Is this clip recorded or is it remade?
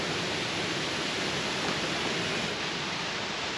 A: recorded